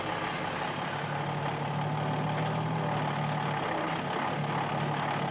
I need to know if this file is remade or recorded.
recorded